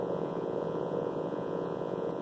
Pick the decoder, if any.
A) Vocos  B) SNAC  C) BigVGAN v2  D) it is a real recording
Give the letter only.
A